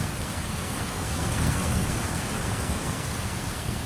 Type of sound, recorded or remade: remade